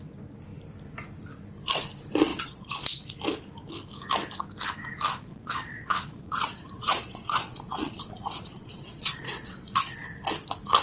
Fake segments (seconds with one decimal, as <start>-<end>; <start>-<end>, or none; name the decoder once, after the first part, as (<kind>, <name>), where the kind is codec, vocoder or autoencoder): 2.3-3.0 (vocoder, Vocos); 5.3-9.8